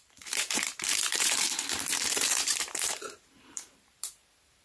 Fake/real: fake